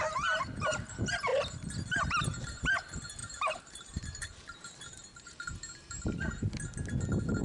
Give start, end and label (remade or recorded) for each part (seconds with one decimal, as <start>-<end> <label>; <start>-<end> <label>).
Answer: 0.0-3.2 recorded; 3.2-6.0 remade; 6.0-7.4 recorded